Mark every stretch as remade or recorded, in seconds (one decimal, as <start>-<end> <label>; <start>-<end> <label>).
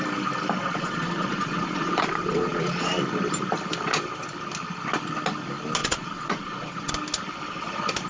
0.0-0.6 recorded; 0.6-2.9 remade; 2.9-5.8 recorded; 5.8-6.9 remade; 6.9-8.1 recorded